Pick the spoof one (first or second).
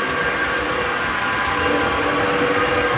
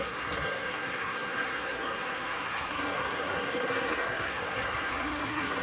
second